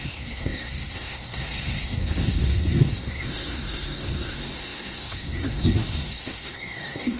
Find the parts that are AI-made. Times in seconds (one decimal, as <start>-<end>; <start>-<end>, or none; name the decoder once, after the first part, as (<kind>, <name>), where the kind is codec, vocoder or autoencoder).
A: 0.0-7.2 (codec, SNAC)